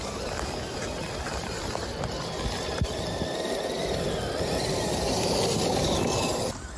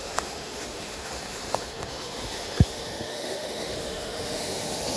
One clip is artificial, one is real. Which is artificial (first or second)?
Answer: second